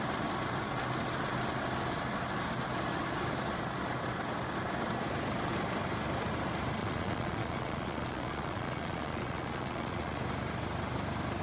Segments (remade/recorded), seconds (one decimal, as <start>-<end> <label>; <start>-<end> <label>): 0.0-6.8 recorded; 6.8-10.2 remade; 10.2-11.4 recorded